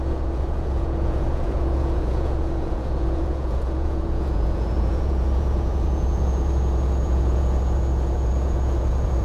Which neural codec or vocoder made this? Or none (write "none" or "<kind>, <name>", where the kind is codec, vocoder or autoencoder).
vocoder, Vocos